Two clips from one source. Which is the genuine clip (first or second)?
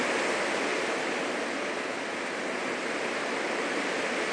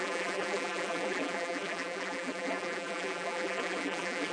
first